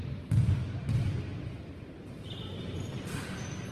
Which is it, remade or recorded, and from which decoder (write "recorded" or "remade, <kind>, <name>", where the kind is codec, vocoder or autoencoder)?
recorded